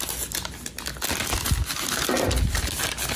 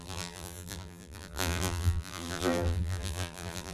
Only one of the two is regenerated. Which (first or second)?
second